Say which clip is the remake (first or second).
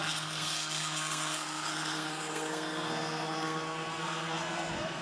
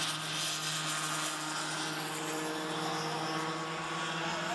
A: first